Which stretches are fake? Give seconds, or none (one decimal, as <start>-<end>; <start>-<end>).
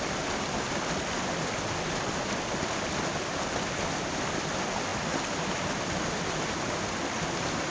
none